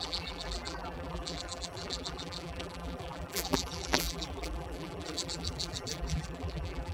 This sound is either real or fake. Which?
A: fake